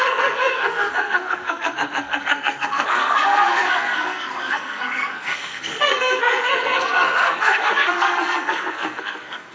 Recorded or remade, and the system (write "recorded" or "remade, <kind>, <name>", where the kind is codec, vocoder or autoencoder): remade, codec, SNAC